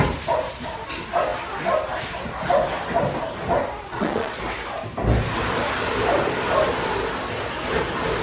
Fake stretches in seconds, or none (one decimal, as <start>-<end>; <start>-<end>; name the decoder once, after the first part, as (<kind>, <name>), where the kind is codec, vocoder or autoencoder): 3.9-4.4 (vocoder, Vocos)